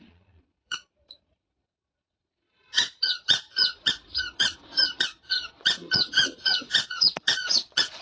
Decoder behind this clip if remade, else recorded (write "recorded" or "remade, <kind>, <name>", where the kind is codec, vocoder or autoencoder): remade, vocoder, Vocos